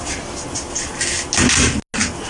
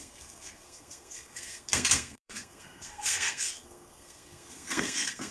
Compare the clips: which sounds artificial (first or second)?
second